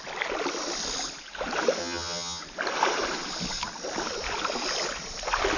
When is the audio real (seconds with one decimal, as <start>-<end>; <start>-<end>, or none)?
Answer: 0.0-1.8; 2.4-5.6